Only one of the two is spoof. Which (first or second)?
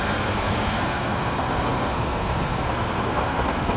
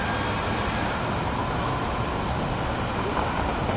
first